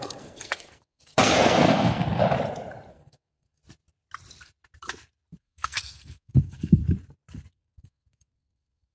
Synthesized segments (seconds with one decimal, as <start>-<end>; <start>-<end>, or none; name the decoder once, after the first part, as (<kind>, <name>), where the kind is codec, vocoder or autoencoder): 0.0-2.2 (codec, SNAC); 2.9-3.6; 5.4-6.8; 7.5-8.9